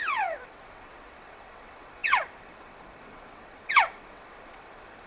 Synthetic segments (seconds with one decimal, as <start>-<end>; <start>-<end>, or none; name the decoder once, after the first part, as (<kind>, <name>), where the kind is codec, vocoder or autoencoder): 0.0-5.1 (vocoder, WaveNeXt)